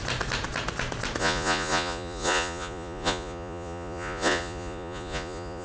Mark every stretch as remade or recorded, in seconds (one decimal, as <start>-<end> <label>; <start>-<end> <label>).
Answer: 0.0-1.2 recorded; 1.2-5.6 remade